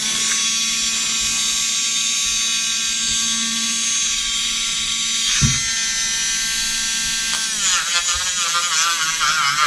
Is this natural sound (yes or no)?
yes